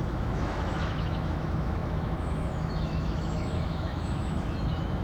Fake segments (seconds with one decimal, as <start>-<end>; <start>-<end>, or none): 0.0-5.0